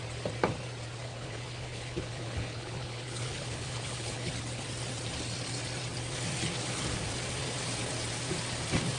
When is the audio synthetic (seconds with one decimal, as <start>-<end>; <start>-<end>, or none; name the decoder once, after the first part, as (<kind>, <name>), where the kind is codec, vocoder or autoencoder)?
1.0-4.3 (codec, HILCodec)